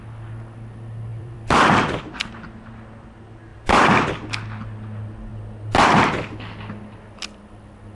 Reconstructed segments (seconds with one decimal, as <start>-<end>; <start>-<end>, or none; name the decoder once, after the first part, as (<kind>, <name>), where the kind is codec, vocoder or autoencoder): 1.1-2.0 (vocoder, BigVGAN v2); 3.5-4.1